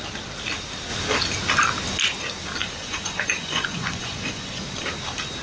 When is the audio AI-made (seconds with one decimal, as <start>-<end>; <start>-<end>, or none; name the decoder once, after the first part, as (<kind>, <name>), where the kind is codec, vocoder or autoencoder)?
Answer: 2.6-4.6 (vocoder, Vocos)